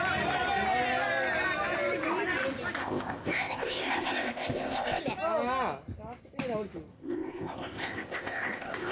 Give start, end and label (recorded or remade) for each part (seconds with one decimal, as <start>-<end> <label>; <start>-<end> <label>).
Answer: 0.0-2.8 recorded; 2.8-5.0 remade; 5.0-6.9 recorded; 6.9-8.9 remade